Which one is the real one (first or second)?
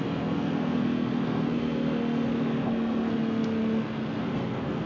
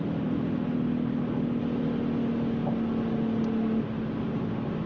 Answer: second